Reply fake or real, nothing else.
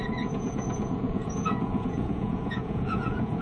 fake